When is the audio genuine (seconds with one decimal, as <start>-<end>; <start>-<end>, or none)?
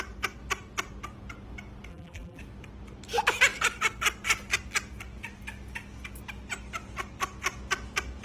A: 0.0-1.9; 2.4-8.2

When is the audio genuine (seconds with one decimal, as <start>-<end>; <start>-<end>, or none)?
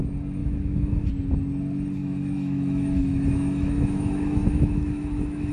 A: 0.0-0.4; 1.1-2.0